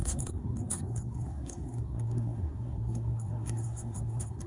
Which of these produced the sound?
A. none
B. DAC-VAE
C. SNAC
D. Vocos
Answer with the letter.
C